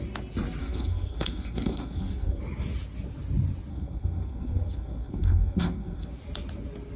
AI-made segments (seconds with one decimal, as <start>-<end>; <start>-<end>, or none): 0.6-2.4; 3.7-6.1